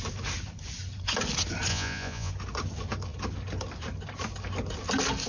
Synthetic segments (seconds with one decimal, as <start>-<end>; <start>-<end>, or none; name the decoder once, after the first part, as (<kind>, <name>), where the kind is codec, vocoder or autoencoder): 1.7-2.3 (vocoder, Vocos)